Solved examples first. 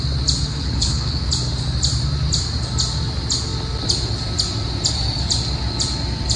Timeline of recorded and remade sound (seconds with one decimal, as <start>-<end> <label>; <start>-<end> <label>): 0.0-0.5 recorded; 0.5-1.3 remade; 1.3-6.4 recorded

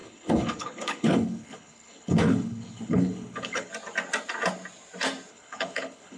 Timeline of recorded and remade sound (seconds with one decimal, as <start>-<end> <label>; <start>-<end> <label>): 0.0-3.7 remade; 3.7-5.3 recorded; 5.3-6.2 remade

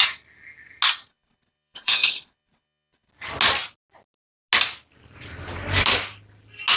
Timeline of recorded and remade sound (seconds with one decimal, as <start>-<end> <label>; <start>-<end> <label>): 0.0-1.1 recorded; 1.1-3.1 remade; 3.1-6.8 recorded

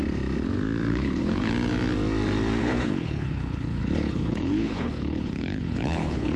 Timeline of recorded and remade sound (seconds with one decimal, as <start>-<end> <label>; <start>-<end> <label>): 0.0-0.9 recorded; 0.9-1.5 remade; 1.5-2.6 recorded; 2.6-6.4 remade

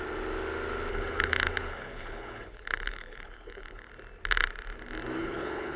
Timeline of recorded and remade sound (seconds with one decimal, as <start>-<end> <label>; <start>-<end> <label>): 0.0-0.9 recorded; 0.9-3.9 remade; 3.9-5.2 recorded; 5.2-5.8 remade

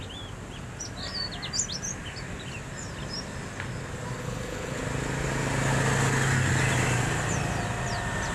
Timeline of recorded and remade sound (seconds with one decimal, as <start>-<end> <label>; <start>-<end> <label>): 0.0-4.2 recorded; 4.2-4.8 remade; 4.8-8.3 recorded